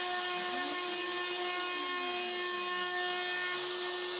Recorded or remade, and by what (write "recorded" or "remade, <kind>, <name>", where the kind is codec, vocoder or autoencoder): recorded